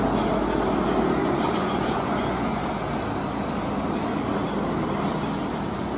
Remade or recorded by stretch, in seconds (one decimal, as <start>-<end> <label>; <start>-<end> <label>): 0.0-1.2 recorded; 1.2-2.6 remade; 2.6-6.0 recorded